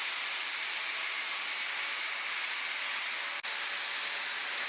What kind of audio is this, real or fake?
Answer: real